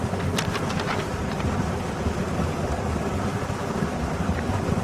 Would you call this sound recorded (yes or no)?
no